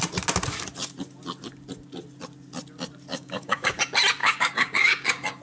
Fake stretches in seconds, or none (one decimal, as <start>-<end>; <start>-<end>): 3.1-3.8; 4.2-5.4